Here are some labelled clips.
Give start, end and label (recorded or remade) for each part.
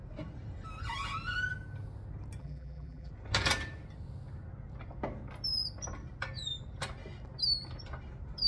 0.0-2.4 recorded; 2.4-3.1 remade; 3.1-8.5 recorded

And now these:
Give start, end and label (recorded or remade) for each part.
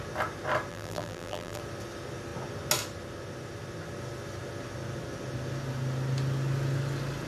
0.0-0.7 recorded; 0.7-1.6 remade; 1.6-7.3 recorded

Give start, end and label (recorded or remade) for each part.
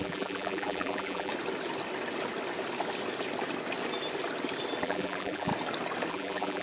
0.0-1.3 remade; 1.3-4.8 recorded; 4.8-5.5 remade; 5.5-6.1 recorded; 6.1-6.6 remade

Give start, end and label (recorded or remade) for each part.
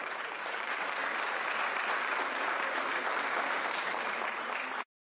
0.0-5.0 remade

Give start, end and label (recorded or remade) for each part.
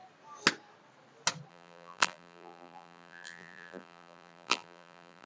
0.0-1.5 recorded; 1.5-5.3 remade